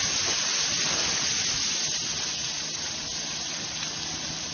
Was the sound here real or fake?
real